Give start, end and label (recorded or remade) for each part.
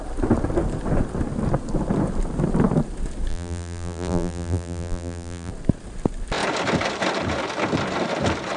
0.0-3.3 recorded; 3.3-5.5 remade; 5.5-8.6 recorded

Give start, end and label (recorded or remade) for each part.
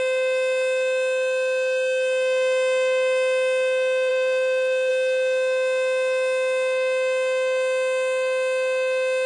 0.0-4.1 recorded; 4.1-4.9 remade; 4.9-9.3 recorded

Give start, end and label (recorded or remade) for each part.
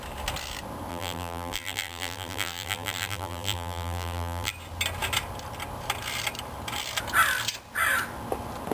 0.0-0.9 recorded; 0.9-4.5 remade; 4.5-8.7 recorded